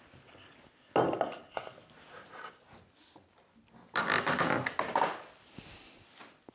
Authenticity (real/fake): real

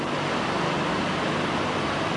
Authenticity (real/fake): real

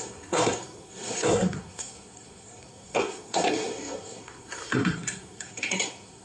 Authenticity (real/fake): fake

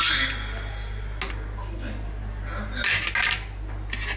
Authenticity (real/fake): real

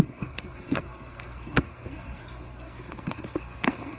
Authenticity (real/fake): fake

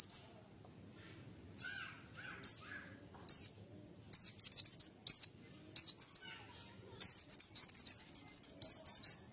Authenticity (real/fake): real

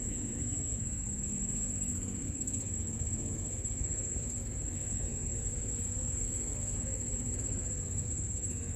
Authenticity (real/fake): fake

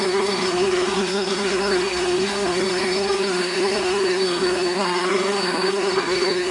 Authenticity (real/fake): fake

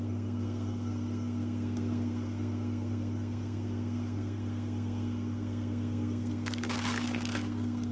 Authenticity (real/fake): fake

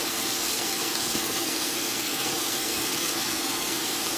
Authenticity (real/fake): fake